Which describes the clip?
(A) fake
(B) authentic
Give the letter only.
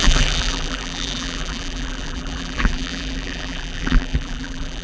A